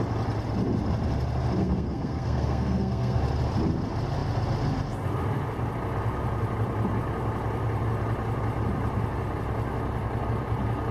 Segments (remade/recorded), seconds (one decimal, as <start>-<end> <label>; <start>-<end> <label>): 0.0-1.6 recorded; 1.6-3.2 remade; 3.2-10.9 recorded